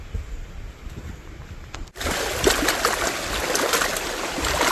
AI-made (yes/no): no